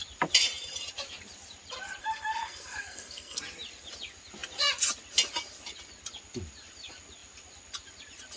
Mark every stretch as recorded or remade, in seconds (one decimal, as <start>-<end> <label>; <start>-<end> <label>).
0.0-2.0 recorded; 2.0-3.4 remade; 3.4-8.4 recorded